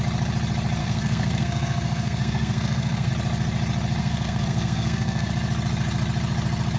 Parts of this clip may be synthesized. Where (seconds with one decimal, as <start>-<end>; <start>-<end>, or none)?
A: 0.8-3.1; 4.0-5.3